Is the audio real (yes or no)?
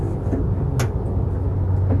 yes